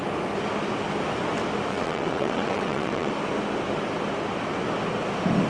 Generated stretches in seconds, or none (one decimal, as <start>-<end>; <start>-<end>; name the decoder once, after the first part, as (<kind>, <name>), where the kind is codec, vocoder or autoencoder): 1.7-3.1 (vocoder, WaveNeXt)